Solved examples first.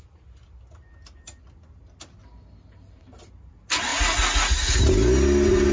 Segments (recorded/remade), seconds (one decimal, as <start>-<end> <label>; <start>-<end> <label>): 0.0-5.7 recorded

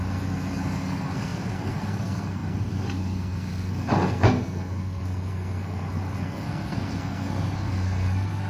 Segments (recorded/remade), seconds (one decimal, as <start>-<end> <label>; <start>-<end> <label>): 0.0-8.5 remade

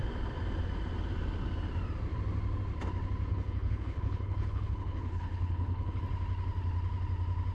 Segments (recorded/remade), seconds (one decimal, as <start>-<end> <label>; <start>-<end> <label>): 0.0-3.3 recorded; 3.3-6.0 remade; 6.0-7.5 recorded

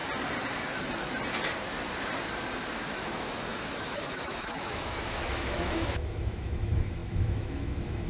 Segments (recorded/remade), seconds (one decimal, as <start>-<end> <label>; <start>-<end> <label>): 0.0-2.9 recorded; 2.9-8.1 remade

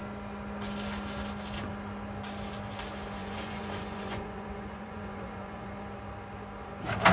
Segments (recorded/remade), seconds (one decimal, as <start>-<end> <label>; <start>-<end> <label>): 0.0-3.2 recorded; 3.2-5.7 remade; 5.7-7.1 recorded

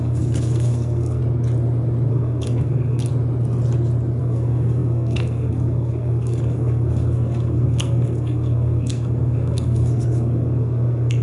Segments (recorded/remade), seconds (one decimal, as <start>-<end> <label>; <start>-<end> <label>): 0.0-1.2 remade; 1.2-2.1 recorded; 2.1-3.1 remade; 3.1-4.2 recorded; 4.2-11.2 remade